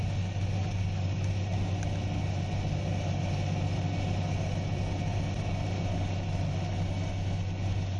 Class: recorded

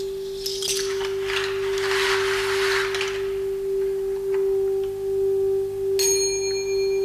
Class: recorded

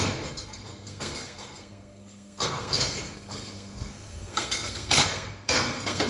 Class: remade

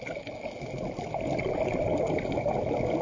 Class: recorded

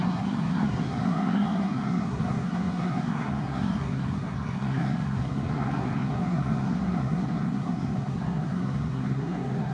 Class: remade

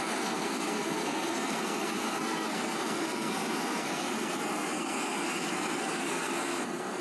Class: remade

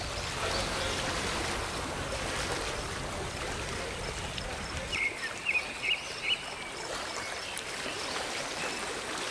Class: recorded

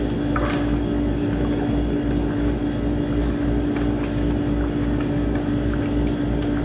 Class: recorded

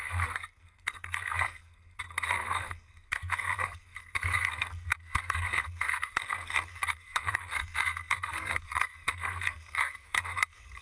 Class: remade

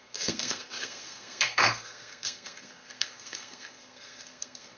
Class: remade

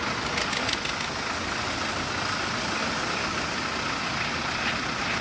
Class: recorded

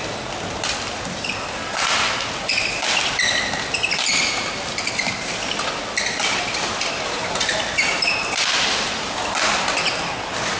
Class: recorded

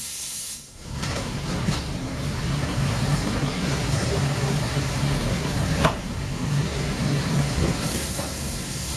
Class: remade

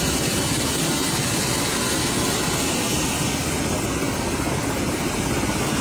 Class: recorded